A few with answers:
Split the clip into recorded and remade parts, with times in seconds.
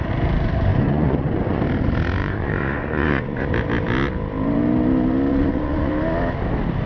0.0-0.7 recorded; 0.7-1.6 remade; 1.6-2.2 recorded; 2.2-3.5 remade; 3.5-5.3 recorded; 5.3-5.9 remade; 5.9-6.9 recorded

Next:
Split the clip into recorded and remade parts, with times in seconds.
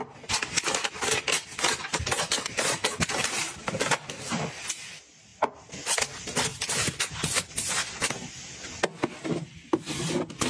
0.0-1.9 recorded; 1.9-4.6 remade; 4.6-10.5 recorded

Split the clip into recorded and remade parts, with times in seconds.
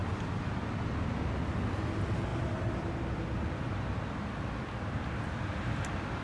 0.0-0.5 remade; 0.5-2.3 recorded; 2.3-6.2 remade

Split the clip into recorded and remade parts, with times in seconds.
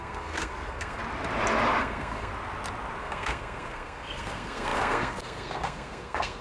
0.0-1.0 remade; 1.0-1.8 recorded; 1.8-2.3 remade; 2.3-3.0 recorded; 3.0-6.4 remade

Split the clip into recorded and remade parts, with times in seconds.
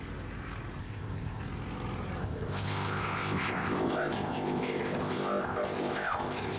0.0-0.8 recorded; 0.8-1.4 remade; 1.4-2.2 recorded; 2.2-6.6 remade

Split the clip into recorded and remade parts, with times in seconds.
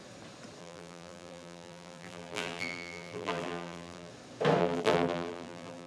0.0-0.6 recorded; 0.6-4.1 remade; 4.1-4.6 recorded; 4.6-5.9 remade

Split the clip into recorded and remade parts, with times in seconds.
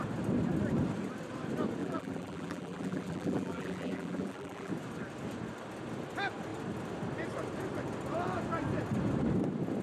0.0-1.8 recorded; 1.8-4.7 remade; 4.7-9.8 recorded